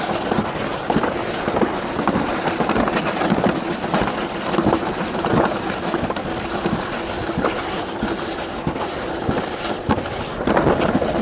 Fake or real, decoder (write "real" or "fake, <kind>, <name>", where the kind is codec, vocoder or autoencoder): real